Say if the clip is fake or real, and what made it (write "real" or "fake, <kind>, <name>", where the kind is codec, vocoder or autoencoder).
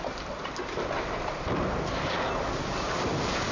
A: real